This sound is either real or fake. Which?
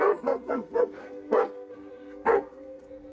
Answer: fake